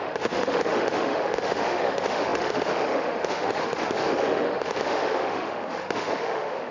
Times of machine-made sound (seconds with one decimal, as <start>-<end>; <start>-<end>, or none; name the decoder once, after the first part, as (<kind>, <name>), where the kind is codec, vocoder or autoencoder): 0.0-6.7 (autoencoder, DAC-VAE)